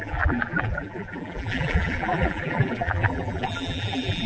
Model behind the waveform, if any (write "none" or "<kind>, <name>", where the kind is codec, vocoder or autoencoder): vocoder, BigVGAN v2